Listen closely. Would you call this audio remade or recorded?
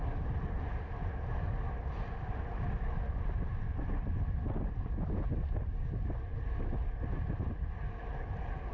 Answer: recorded